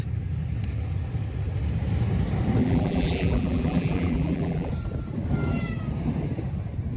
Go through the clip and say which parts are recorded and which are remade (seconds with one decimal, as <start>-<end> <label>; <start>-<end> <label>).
0.0-2.6 recorded; 2.6-4.7 remade; 4.7-7.0 recorded